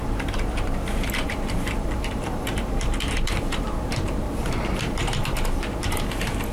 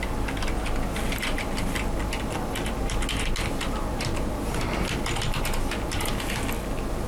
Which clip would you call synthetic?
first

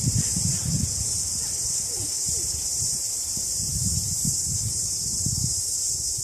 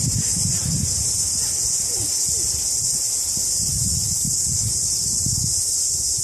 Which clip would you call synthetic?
first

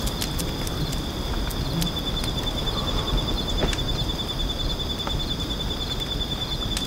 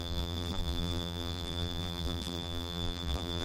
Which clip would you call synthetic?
second